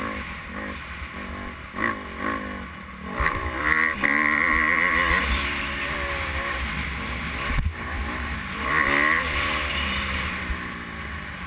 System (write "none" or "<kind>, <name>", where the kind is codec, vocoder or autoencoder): none